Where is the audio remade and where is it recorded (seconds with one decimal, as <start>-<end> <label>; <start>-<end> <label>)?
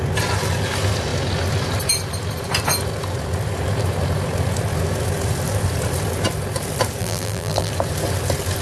0.0-7.0 recorded; 7.0-7.7 remade; 7.7-8.6 recorded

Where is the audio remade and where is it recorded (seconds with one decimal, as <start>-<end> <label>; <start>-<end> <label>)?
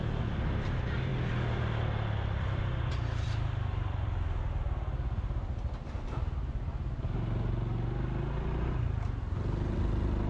0.0-10.3 recorded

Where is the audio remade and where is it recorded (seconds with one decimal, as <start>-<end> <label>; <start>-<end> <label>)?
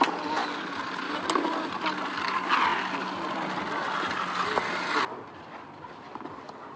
0.0-6.8 recorded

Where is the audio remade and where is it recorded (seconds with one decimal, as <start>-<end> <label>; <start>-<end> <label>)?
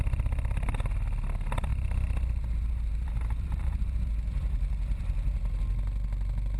0.0-1.7 recorded; 1.7-5.6 remade; 5.6-6.6 recorded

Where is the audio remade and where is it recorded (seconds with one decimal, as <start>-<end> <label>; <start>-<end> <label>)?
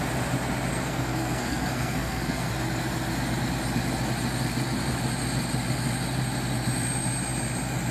0.0-0.7 recorded; 0.7-2.5 remade; 2.5-7.9 recorded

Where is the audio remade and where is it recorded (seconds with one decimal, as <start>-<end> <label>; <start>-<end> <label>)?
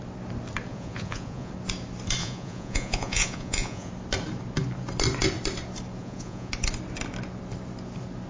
0.0-0.7 recorded; 0.7-1.5 remade; 1.5-2.2 recorded; 2.2-3.9 remade; 3.9-6.0 recorded; 6.0-6.5 remade; 6.5-8.3 recorded